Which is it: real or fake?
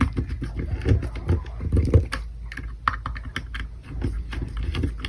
real